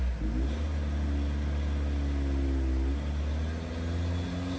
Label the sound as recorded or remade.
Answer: recorded